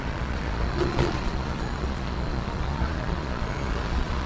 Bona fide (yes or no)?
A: no